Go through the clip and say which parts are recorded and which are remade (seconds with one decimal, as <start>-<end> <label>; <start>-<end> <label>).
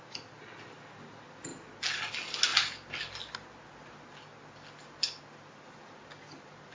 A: 0.0-6.7 recorded